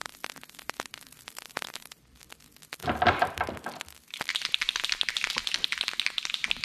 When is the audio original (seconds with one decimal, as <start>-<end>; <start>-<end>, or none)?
2.3-2.8; 5.3-6.6